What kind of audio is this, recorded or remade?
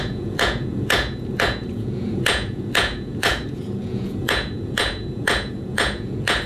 remade